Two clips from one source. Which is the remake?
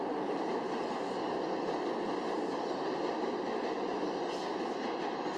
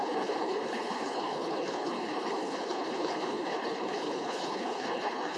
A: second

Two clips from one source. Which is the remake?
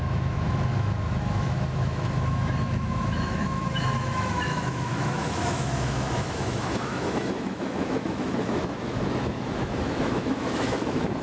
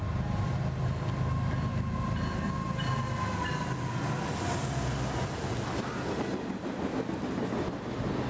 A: first